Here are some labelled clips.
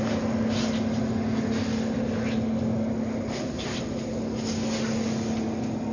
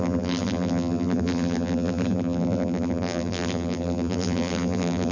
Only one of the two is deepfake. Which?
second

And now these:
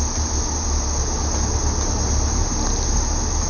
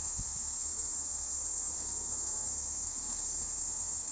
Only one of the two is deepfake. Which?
second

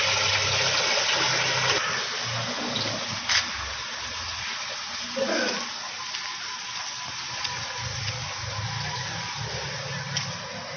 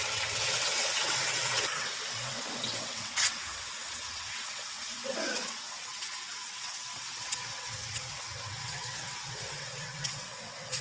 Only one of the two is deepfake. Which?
second